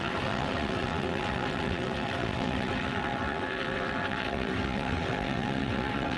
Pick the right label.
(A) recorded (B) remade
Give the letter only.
B